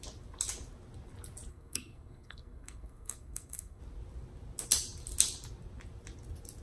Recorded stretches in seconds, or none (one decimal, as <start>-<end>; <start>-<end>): 0.0-1.5; 3.8-6.6